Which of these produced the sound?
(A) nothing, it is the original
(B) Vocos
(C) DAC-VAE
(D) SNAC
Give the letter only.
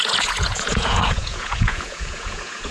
B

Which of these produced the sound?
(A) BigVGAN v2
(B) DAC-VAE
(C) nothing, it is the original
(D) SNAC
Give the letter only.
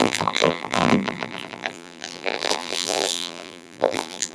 A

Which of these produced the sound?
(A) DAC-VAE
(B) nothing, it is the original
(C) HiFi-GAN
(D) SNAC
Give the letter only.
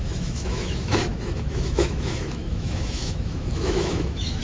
A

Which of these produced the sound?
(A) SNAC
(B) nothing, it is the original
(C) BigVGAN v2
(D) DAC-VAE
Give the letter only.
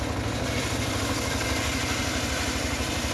B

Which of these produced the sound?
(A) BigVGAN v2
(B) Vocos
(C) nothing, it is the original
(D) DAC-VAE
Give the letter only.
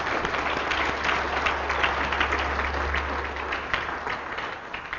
C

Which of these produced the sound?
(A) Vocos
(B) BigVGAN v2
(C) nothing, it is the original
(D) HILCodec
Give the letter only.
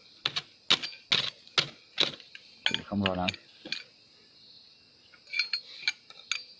C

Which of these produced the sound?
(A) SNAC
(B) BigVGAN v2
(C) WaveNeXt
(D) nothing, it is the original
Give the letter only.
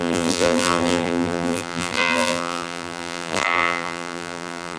B